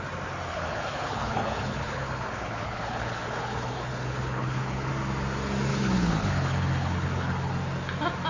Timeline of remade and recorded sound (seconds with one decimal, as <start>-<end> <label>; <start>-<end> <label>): 0.0-0.5 recorded; 0.5-4.9 remade; 4.9-5.7 recorded; 5.7-7.5 remade; 7.5-8.3 recorded